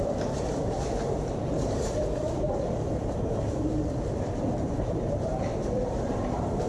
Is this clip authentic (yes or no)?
no